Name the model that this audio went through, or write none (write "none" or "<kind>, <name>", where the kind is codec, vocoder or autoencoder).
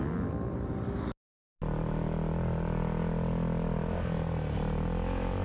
none